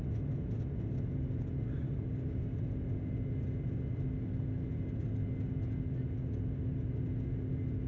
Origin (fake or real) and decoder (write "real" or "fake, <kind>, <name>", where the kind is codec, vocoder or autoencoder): real